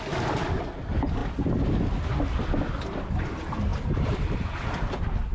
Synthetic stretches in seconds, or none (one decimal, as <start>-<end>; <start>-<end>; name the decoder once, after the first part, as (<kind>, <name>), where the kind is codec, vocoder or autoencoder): none

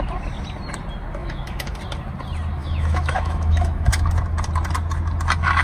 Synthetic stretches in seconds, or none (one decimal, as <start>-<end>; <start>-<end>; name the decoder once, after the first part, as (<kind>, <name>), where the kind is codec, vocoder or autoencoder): 1.2-1.8 (autoencoder, DAC-VAE); 2.6-4.1

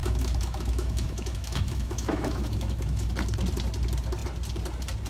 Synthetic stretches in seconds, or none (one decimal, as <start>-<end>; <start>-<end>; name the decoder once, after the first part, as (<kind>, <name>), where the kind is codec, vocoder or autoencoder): 0.0-3.1 (autoencoder, DAC-VAE)

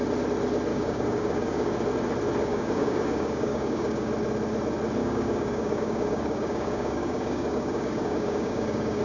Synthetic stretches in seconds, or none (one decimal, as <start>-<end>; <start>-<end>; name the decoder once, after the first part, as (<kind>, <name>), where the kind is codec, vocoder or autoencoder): 0.7-1.7 (codec, DAC); 2.4-4.1; 5.0-9.0

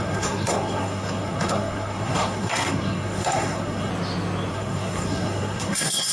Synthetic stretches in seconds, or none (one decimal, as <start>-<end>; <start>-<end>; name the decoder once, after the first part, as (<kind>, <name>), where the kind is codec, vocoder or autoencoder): 0.0-3.9 (codec, SNAC); 4.5-6.1